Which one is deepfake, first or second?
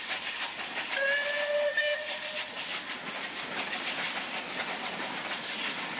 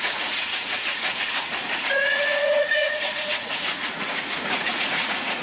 second